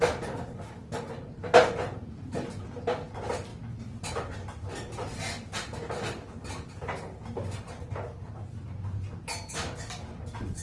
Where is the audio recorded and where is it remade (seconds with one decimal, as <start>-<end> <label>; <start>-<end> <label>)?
0.0-10.6 recorded